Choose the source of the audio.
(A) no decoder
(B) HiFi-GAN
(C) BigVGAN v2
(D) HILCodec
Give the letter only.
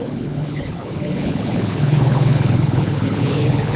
D